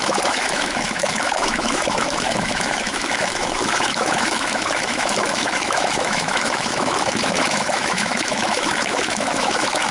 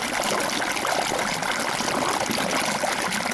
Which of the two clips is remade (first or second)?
first